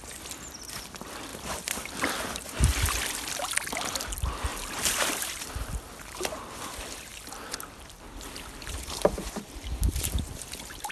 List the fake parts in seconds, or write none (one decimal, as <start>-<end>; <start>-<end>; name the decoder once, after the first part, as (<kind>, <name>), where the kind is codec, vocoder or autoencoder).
1.3-3.5 (vocoder, BigVGAN v2); 4.5-5.8; 7.1-10.5